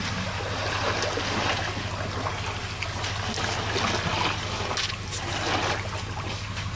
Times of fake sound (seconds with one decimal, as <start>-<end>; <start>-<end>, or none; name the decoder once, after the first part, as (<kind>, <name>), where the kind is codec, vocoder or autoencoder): none